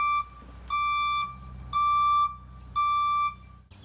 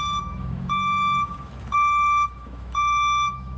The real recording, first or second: first